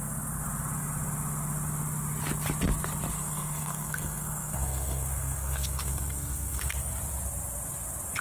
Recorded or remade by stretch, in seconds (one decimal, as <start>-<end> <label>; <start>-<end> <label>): 0.0-3.1 recorded; 3.1-6.9 remade; 6.9-8.2 recorded